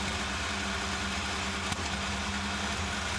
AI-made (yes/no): no